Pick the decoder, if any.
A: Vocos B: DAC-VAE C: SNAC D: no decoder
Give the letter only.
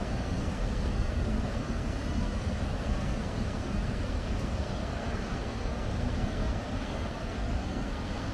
C